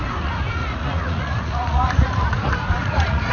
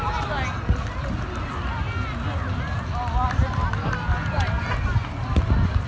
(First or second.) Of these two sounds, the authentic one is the second